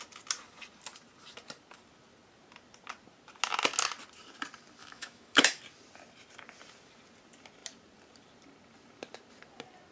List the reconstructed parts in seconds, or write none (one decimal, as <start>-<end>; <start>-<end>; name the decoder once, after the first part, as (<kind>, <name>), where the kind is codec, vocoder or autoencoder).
4.8-5.6 (autoencoder, DAC-VAE)

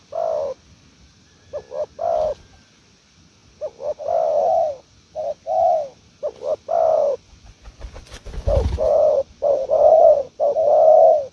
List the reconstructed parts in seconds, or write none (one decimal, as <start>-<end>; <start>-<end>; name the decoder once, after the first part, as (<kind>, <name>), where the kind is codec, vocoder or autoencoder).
6.9-10.4 (vocoder, Vocos)